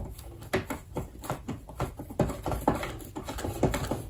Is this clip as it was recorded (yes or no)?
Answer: yes